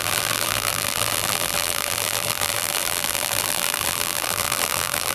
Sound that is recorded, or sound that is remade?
remade